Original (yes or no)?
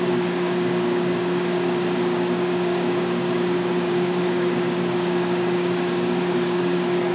no